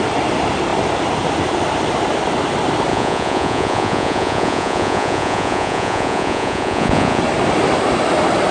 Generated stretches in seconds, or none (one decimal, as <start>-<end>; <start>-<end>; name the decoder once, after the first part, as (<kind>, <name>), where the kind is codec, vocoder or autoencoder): 2.9-7.2 (vocoder, Vocos)